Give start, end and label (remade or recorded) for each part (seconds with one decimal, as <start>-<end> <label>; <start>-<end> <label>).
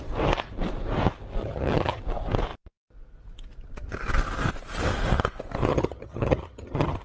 0.0-1.4 recorded; 1.4-2.0 remade; 2.0-5.7 recorded; 5.7-7.0 remade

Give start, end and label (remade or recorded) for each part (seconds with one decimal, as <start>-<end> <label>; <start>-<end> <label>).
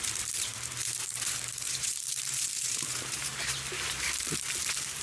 0.0-3.3 remade; 3.3-5.0 recorded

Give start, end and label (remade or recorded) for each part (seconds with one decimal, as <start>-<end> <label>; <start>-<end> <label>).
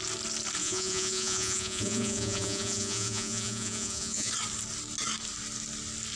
0.0-0.6 recorded; 0.6-4.3 remade; 4.3-6.2 recorded